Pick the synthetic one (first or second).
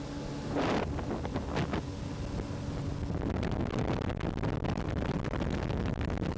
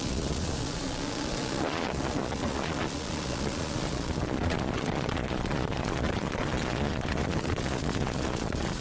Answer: second